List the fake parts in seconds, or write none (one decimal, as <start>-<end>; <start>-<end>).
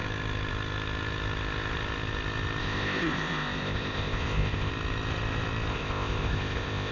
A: 2.6-4.7; 5.7-6.9